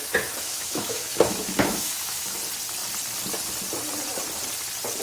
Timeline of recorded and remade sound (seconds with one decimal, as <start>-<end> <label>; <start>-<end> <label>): 0.0-2.4 remade; 2.4-5.0 recorded